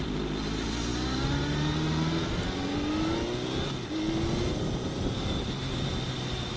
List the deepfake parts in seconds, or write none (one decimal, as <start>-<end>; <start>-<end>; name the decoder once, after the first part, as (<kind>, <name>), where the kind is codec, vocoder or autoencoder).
none